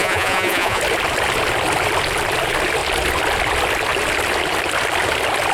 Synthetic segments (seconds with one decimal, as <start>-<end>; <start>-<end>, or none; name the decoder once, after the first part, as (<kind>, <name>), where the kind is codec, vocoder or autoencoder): 0.0-0.8 (vocoder, Vocos)